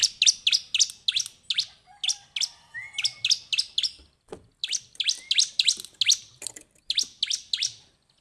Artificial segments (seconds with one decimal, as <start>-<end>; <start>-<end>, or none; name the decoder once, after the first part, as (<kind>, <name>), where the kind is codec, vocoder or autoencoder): 4.6-5.5 (vocoder, BigVGAN v2); 6.2-6.7